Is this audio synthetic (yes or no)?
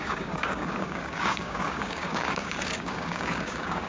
yes